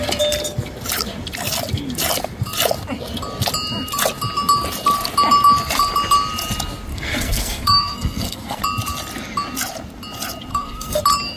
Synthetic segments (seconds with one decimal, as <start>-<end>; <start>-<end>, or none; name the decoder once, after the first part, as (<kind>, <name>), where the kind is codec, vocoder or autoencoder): 6.9-8.6 (codec, SNAC); 10.5-11.0